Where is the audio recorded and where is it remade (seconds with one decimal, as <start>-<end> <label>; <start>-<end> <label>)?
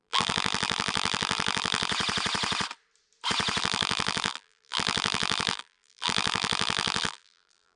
0.0-1.9 remade; 1.9-3.6 recorded; 3.6-7.8 remade